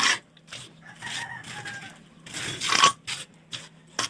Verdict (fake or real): real